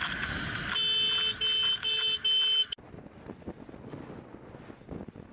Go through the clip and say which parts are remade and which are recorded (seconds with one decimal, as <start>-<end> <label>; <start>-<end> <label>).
0.0-5.3 recorded